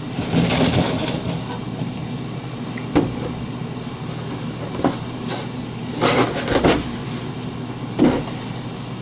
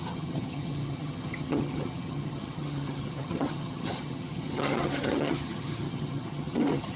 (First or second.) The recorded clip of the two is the first